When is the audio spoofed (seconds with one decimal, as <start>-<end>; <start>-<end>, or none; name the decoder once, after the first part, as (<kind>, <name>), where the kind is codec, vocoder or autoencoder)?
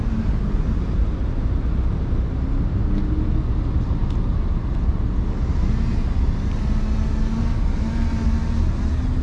none